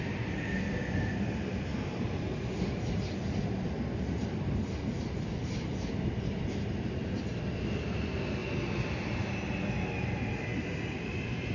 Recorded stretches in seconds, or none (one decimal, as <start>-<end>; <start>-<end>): 0.0-11.5

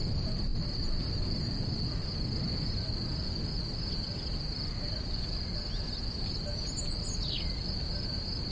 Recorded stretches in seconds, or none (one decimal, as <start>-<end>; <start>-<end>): 0.0-8.5

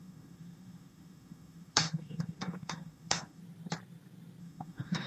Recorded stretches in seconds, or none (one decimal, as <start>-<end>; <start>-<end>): 3.4-4.4

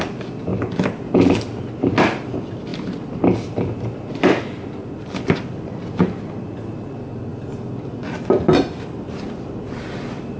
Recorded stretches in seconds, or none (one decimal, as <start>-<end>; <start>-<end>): 0.0-10.4